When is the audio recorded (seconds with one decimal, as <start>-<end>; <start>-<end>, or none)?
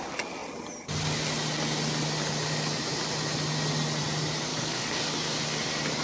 0.0-4.5; 5.0-6.0